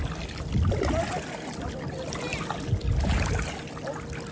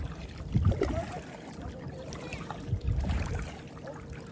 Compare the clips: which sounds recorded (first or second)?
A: first